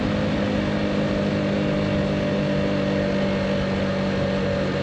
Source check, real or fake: real